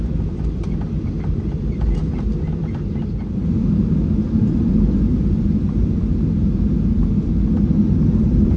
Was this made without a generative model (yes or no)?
yes